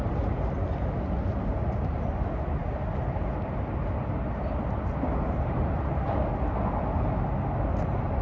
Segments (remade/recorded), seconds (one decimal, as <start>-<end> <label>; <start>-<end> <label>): 0.0-8.2 recorded